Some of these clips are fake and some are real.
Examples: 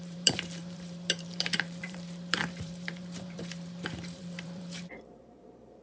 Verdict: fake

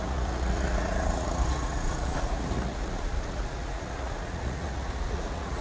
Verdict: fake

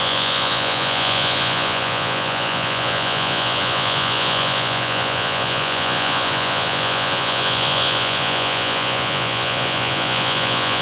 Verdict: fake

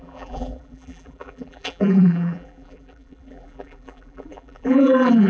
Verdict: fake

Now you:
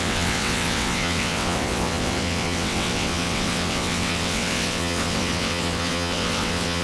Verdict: fake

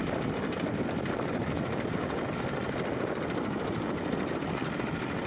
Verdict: real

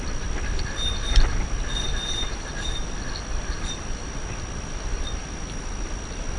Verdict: real